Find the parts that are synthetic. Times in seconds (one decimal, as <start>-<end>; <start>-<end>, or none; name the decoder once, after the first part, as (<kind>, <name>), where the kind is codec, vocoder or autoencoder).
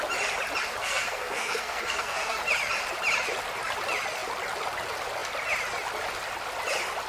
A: 0.8-2.4 (codec, SNAC)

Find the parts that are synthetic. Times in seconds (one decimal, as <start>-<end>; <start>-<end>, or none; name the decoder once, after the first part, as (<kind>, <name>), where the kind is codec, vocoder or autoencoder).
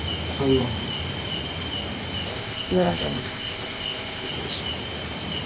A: 2.3-4.3 (codec, ZipCodec)